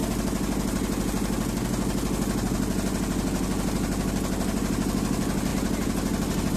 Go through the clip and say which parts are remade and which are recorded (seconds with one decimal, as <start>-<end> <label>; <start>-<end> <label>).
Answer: 0.0-6.6 recorded